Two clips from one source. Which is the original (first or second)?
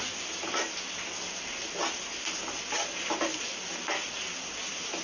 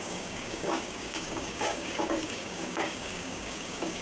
first